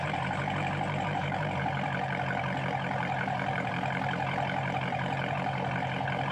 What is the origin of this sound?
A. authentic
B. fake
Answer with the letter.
B